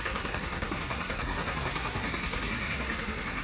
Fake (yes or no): yes